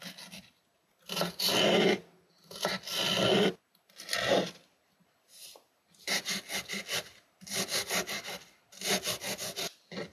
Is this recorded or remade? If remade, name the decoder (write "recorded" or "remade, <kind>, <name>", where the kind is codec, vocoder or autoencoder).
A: recorded